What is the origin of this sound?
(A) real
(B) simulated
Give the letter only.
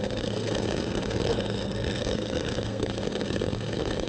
B